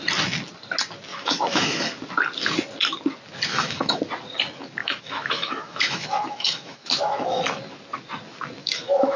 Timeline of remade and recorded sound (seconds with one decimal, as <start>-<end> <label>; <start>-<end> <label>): 0.0-1.1 recorded; 1.1-2.0 remade; 2.0-3.5 recorded; 3.5-4.0 remade; 4.0-4.8 recorded; 4.8-7.6 remade; 7.6-8.6 recorded; 8.6-9.2 remade